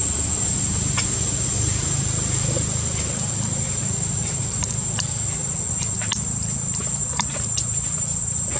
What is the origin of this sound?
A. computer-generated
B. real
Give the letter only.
A